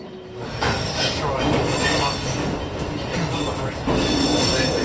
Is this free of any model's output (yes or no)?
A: yes